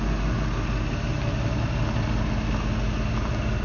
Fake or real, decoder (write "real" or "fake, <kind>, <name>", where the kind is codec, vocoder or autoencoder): real